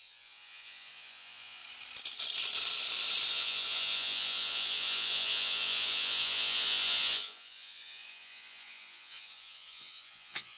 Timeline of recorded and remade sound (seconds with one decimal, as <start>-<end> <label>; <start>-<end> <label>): 0.0-1.6 remade; 1.6-3.3 recorded; 3.3-10.6 remade